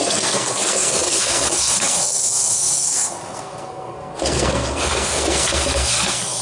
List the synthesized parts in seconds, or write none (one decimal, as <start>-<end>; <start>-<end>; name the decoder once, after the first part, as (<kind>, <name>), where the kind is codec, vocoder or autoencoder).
0.0-6.4 (codec, SNAC)